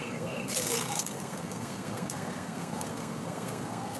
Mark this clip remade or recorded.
remade